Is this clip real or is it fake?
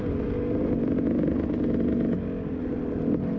real